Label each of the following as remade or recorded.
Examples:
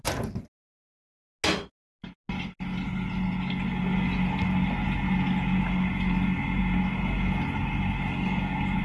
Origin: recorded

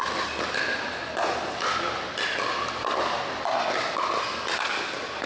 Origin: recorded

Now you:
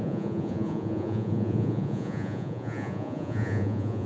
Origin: remade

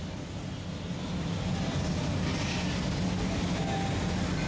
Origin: recorded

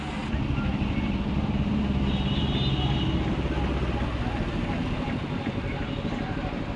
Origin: recorded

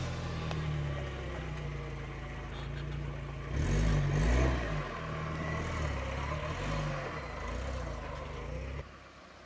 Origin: recorded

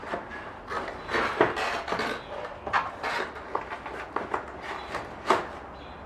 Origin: recorded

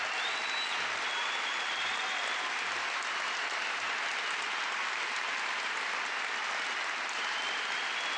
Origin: recorded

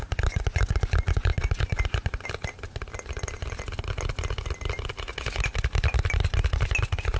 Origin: recorded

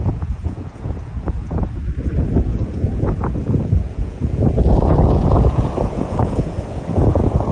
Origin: remade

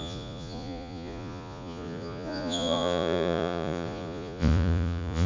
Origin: remade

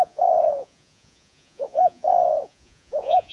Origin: remade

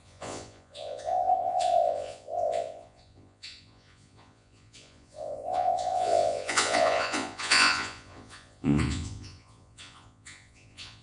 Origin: remade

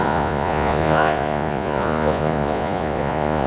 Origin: remade